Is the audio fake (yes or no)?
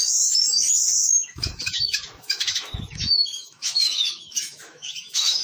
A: yes